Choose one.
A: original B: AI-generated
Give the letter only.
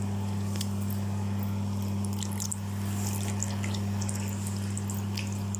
A